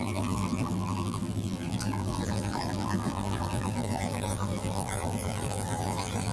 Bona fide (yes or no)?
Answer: no